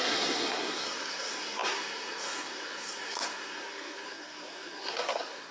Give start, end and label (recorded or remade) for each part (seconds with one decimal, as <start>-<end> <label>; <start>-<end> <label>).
0.0-5.5 remade